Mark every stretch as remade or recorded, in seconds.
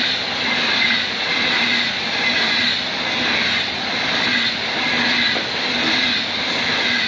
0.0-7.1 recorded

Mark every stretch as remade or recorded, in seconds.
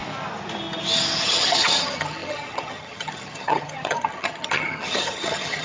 0.0-1.2 recorded; 1.2-5.6 remade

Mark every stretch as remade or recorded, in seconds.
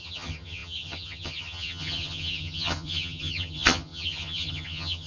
0.0-5.1 remade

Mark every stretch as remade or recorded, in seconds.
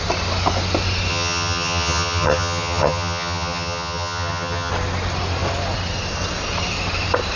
0.0-1.1 recorded; 1.1-4.7 remade; 4.7-7.4 recorded